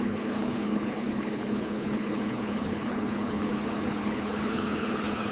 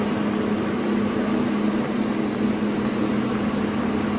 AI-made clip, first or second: first